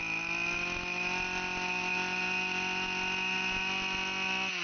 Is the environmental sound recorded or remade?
recorded